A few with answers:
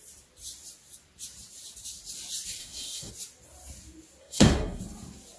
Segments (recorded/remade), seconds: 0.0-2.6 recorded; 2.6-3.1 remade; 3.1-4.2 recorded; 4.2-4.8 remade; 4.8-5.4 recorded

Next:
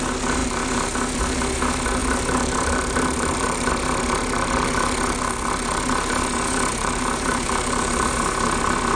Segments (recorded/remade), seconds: 0.0-2.0 recorded; 2.0-3.7 remade; 3.7-6.7 recorded; 6.7-8.1 remade; 8.1-9.0 recorded

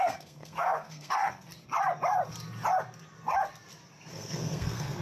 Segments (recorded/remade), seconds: 0.0-1.5 remade; 1.5-4.1 recorded; 4.1-5.0 remade

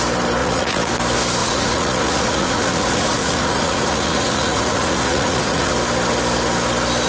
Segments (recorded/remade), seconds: 0.0-0.4 recorded; 0.4-0.9 remade; 0.9-1.4 recorded; 1.4-5.7 remade; 5.7-7.1 recorded

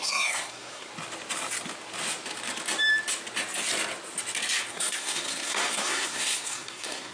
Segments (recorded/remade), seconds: 0.0-0.9 remade; 0.9-4.7 recorded; 4.7-7.1 remade

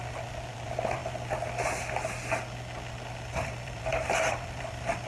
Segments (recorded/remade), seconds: 0.0-0.5 recorded; 0.5-1.0 remade; 1.0-3.3 recorded; 3.3-5.1 remade

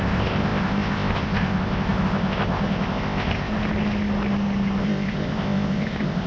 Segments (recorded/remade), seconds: 0.0-3.5 remade; 3.5-4.8 recorded; 4.8-6.3 remade